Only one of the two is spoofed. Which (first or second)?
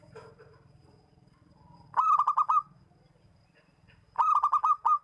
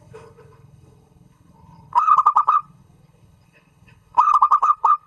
second